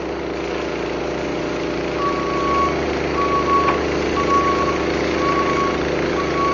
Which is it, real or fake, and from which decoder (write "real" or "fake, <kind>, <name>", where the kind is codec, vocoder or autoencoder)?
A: real